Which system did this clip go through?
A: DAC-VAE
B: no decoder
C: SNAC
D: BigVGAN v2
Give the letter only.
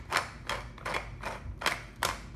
B